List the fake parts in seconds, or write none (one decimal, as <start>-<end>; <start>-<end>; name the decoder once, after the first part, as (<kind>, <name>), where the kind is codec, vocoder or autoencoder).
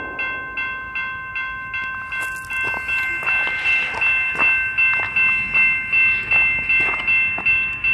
none